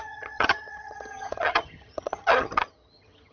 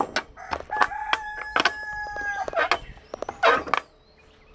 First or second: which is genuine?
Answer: second